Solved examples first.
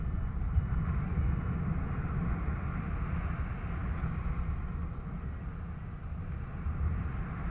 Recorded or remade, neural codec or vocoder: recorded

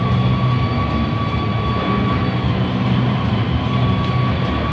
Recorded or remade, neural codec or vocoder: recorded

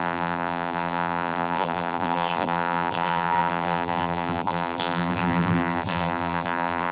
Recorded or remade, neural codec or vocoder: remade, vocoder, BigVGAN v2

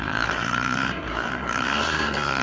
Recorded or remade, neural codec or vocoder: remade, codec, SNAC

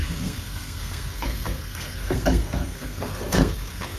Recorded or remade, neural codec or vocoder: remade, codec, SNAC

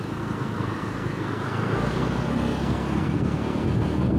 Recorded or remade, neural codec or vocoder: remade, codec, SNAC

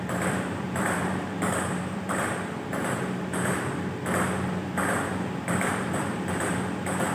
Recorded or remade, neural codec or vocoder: remade, vocoder, BigVGAN v2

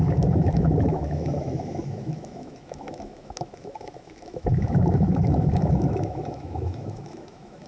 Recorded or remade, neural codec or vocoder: remade, autoencoder, DAC-VAE